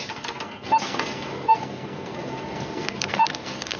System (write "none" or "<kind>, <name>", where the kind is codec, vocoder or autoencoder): codec, SNAC